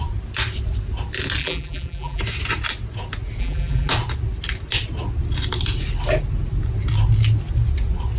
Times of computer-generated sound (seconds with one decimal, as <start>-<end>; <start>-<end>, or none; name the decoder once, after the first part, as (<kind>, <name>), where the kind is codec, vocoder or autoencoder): 1.4-2.2 (vocoder, BigVGAN v2); 3.4-3.9